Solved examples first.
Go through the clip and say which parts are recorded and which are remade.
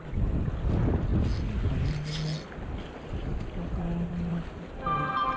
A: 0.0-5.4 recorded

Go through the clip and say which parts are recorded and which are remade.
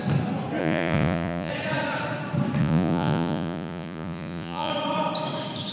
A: 0.0-0.6 recorded; 0.6-1.5 remade; 1.5-2.6 recorded; 2.6-4.7 remade; 4.7-5.7 recorded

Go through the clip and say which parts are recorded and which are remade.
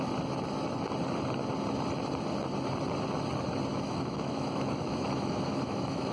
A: 0.0-3.7 recorded; 3.7-6.1 remade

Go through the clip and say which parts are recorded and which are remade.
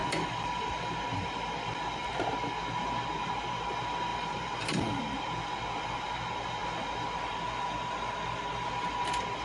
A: 0.0-0.9 remade; 0.9-4.1 recorded; 4.1-5.0 remade; 5.0-9.4 recorded